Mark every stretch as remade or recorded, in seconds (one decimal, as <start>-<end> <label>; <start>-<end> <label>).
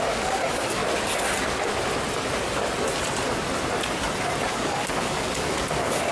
0.0-0.8 remade; 0.8-4.5 recorded; 4.5-6.1 remade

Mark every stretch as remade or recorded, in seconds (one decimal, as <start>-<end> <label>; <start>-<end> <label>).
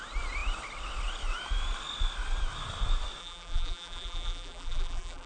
0.0-3.2 recorded; 3.2-5.3 remade